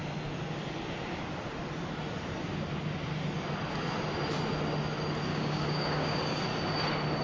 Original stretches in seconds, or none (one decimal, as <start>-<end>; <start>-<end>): 0.0-5.3; 6.4-7.2